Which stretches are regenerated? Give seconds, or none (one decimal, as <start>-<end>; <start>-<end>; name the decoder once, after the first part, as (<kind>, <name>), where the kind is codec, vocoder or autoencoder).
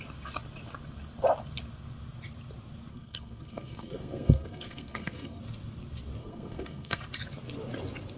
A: 2.9-5.4 (codec, SNAC); 6.2-7.0